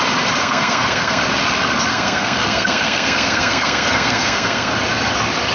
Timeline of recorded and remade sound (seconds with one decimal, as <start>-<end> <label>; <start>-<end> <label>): 0.0-0.4 recorded; 0.4-1.2 remade; 1.2-1.9 recorded; 1.9-4.7 remade; 4.7-5.5 recorded